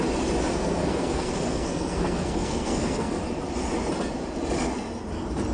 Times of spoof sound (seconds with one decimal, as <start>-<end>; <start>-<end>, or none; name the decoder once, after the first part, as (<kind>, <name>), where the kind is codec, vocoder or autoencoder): 0.5-3.2 (codec, SNAC)